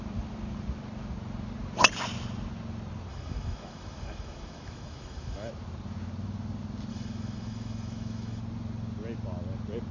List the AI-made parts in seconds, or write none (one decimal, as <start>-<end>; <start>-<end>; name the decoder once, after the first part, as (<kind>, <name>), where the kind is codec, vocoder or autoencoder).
3.1-5.5 (autoencoder, DAC-VAE); 6.9-8.4